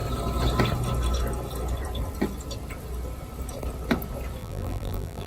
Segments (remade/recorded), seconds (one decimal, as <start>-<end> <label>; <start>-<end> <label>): 0.0-4.4 recorded; 4.4-5.3 remade